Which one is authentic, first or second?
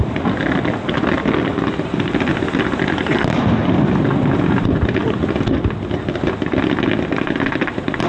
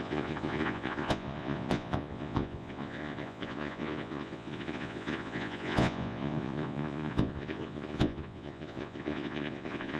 first